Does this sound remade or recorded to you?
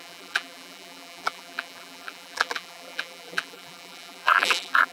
remade